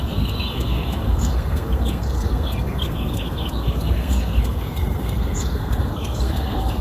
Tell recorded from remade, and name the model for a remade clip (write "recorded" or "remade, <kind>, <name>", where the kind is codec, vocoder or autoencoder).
remade, codec, SNAC